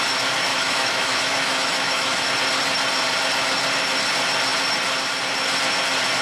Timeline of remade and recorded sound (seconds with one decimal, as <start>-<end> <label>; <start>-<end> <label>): 0.0-0.5 recorded; 0.5-2.3 remade; 2.3-6.2 recorded